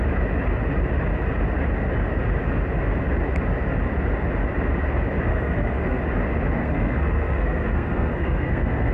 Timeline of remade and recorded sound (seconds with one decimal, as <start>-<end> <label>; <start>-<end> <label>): 0.0-5.3 recorded; 5.3-6.0 remade; 6.0-6.6 recorded; 6.6-8.9 remade